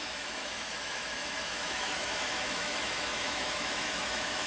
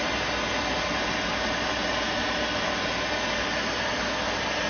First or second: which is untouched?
second